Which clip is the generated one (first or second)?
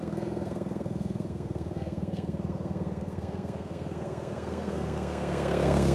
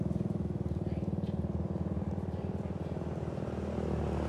first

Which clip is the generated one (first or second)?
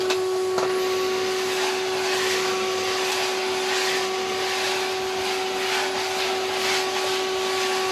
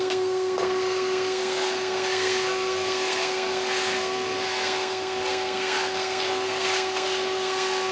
second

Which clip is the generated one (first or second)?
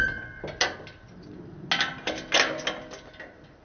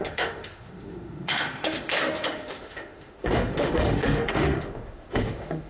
second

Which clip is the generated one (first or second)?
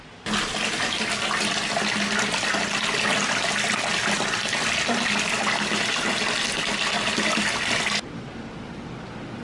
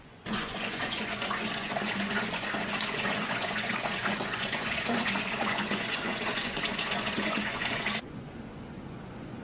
second